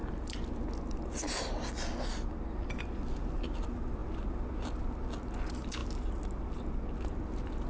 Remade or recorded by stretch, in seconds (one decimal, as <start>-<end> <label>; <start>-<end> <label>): 0.0-7.7 recorded